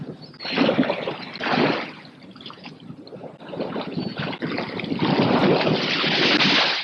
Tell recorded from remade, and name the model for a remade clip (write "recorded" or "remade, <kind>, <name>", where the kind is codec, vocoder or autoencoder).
recorded